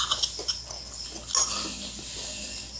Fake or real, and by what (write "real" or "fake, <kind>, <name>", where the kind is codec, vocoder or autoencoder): real